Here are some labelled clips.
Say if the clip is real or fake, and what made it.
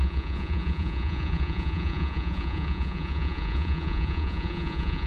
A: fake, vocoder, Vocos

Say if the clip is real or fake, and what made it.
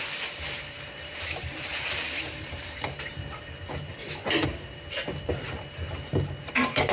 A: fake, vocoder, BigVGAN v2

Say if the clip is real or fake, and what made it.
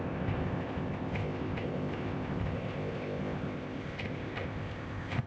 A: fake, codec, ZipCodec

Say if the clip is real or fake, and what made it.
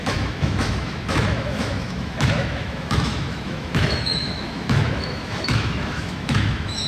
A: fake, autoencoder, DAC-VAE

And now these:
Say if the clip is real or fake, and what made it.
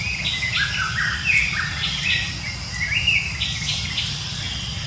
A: real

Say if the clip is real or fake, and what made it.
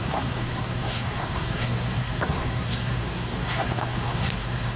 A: fake, codec, SNAC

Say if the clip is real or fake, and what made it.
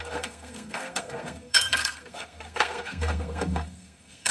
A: fake, codec, SNAC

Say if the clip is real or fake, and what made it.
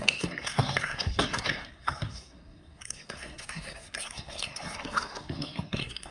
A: fake, codec, SNAC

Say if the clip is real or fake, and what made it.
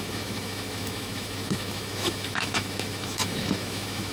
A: fake, autoencoder, DAC-VAE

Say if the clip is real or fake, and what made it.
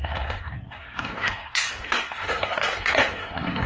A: fake, codec, SNAC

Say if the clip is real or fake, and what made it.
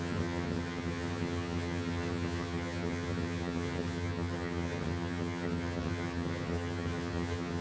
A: fake, vocoder, HiFi-GAN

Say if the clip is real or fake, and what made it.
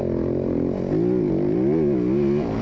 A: real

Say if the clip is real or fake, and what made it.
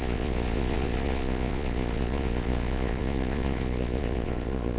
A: fake, vocoder, Vocos